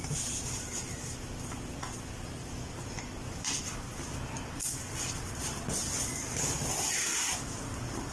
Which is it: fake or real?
real